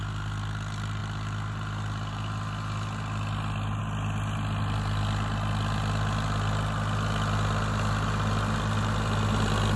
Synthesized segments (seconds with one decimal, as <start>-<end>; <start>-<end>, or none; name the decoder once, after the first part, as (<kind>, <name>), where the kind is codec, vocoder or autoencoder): none